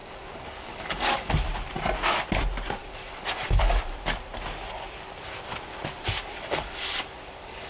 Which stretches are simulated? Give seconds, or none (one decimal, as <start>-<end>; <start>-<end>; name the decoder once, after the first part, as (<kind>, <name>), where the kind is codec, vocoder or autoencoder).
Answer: 0.0-1.3 (codec, DAC); 2.8-3.8; 6.2-7.7

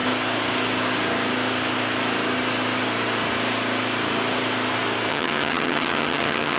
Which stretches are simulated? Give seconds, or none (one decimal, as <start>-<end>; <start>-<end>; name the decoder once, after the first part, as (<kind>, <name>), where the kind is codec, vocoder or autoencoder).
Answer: 5.1-6.6 (vocoder, HiFi-GAN)